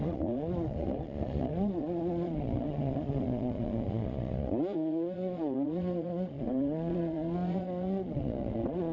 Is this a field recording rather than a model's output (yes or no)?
no